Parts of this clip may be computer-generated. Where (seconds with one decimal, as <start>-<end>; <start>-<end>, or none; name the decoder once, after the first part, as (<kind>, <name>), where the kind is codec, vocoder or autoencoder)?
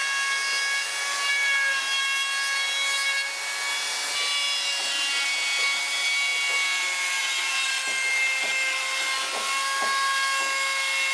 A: none